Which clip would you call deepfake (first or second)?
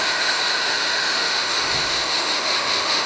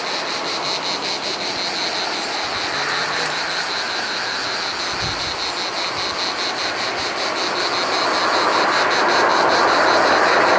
first